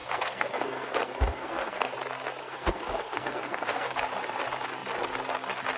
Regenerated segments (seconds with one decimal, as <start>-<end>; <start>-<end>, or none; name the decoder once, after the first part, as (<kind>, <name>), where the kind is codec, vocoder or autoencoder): 0.0-1.9 (codec, SNAC); 2.4-4.0